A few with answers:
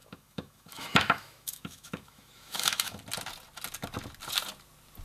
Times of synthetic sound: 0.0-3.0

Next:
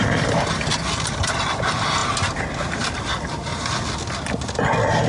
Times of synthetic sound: none